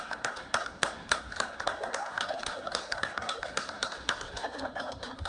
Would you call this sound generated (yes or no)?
yes